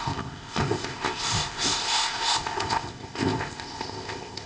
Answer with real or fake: fake